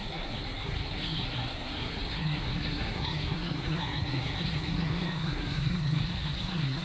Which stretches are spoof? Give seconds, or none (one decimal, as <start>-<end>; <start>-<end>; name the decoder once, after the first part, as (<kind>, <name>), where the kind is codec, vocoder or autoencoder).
0.0-6.8 (codec, SNAC)